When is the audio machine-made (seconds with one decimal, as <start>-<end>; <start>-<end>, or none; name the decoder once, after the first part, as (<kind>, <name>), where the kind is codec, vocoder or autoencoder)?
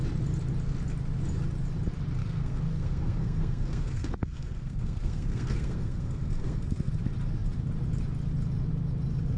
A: 2.2-6.9 (codec, SNAC)